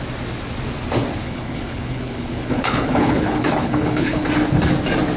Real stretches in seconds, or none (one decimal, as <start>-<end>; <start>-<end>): 0.0-1.2; 4.3-5.2